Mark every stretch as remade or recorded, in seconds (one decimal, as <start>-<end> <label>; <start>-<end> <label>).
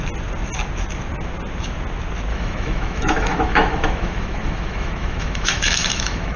0.0-2.3 recorded; 2.3-6.4 remade